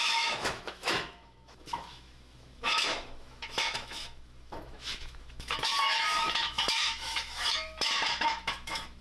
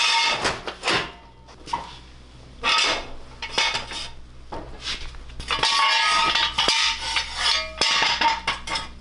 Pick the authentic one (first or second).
second